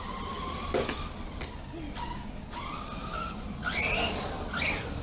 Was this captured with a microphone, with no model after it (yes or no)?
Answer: yes